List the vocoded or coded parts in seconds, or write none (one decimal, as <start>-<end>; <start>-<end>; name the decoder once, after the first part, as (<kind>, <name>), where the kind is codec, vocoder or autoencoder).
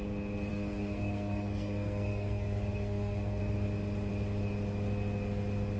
0.5-3.4 (codec, SNAC)